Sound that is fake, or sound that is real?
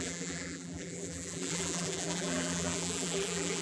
fake